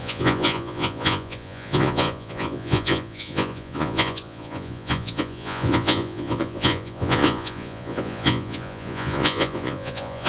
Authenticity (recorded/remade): remade